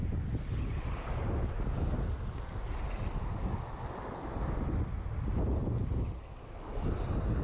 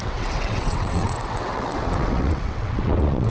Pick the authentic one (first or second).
first